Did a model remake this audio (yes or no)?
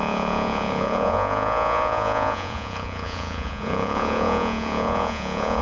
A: yes